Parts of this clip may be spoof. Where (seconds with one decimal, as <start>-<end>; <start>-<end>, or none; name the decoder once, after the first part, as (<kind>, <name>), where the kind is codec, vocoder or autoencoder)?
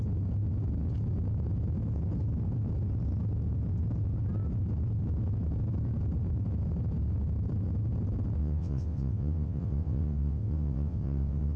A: 8.4-11.6 (vocoder, WaveNeXt)